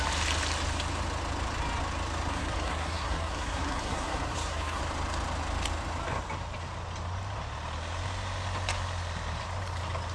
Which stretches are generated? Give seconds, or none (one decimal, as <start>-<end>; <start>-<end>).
2.3-4.8

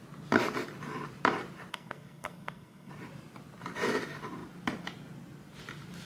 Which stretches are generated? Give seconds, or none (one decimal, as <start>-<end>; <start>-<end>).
1.7-2.9